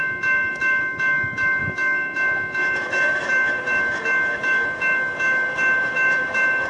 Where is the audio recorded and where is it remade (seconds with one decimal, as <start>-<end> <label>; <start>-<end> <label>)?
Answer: 0.0-6.7 remade